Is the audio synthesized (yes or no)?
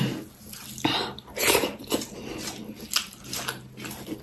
no